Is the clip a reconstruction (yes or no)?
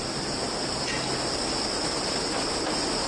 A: no